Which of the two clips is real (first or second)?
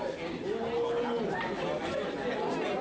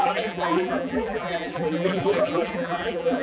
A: first